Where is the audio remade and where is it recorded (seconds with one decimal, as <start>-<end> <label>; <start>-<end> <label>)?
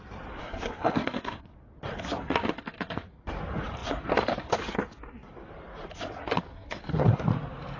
0.0-0.4 recorded; 0.4-1.5 remade; 1.5-6.5 recorded; 6.5-7.2 remade; 7.2-7.8 recorded